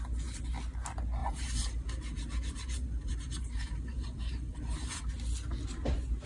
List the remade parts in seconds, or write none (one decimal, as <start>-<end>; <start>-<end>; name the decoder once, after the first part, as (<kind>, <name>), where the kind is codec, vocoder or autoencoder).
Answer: 1.2-5.0 (vocoder, BigVGAN v2)